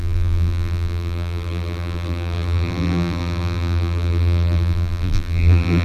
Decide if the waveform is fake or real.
fake